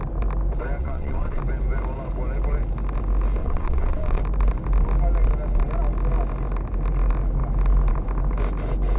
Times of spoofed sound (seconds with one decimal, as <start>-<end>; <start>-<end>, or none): 0.8-1.4; 3.4-4.2